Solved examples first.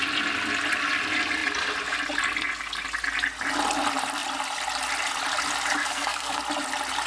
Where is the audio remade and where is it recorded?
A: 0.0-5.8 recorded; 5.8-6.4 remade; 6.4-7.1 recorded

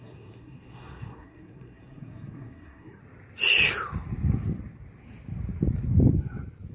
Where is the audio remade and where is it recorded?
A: 0.0-3.0 remade; 3.0-6.7 recorded

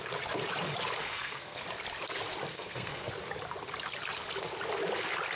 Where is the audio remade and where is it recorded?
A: 0.0-1.0 recorded; 1.0-1.6 remade; 1.6-2.5 recorded; 2.5-3.1 remade; 3.1-5.4 recorded

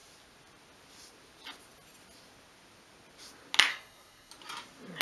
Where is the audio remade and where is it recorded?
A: 0.0-3.7 recorded; 3.7-4.3 remade; 4.3-5.0 recorded

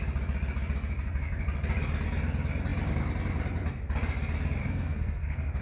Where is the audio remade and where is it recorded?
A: 0.0-4.6 recorded; 4.6-5.6 remade

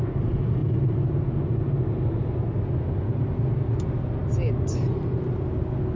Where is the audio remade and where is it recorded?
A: 0.0-6.0 recorded

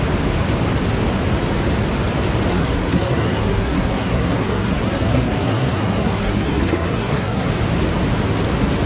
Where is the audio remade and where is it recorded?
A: 0.0-2.5 recorded; 2.5-7.5 remade; 7.5-8.9 recorded